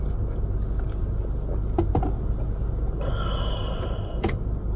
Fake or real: real